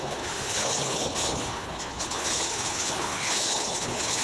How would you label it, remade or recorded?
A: remade